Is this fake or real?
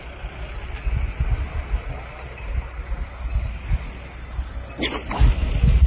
real